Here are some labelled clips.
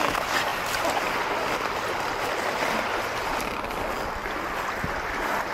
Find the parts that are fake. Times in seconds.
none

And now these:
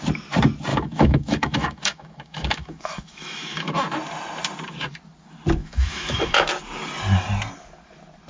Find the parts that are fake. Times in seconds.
0.7-3.7 (autoencoder, DAC-VAE); 5.6-6.5

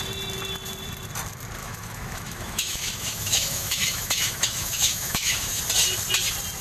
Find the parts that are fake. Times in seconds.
1.6-5.6 (autoencoder, DAC-VAE)

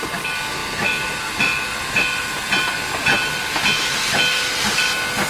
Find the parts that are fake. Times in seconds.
none

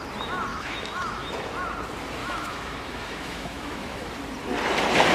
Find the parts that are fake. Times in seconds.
0.5-1.3 (autoencoder, DAC-VAE); 2.2-4.1